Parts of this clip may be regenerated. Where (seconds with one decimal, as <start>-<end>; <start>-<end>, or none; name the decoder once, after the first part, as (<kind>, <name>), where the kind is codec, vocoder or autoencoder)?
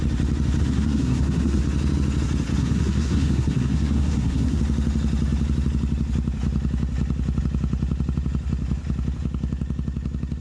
0.6-1.6 (codec, SNAC); 2.6-4.6